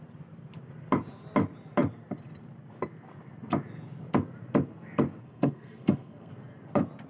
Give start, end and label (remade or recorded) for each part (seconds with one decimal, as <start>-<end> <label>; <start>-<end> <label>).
0.0-5.2 recorded; 5.2-6.3 remade; 6.3-7.1 recorded